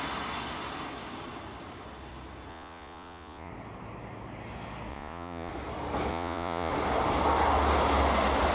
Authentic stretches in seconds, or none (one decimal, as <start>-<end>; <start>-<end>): 0.0-2.5; 3.5-4.9; 5.5-6.1; 6.7-8.5